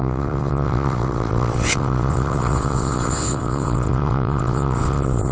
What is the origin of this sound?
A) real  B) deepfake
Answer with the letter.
B